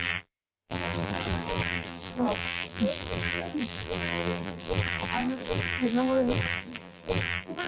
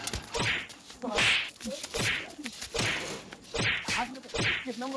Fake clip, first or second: first